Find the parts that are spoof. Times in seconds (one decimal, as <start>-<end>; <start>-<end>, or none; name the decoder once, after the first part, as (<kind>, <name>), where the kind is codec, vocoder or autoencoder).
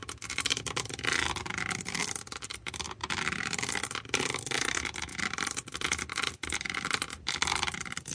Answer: none